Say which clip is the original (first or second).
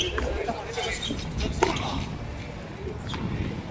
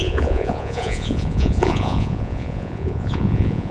first